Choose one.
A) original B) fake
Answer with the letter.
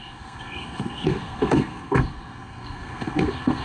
B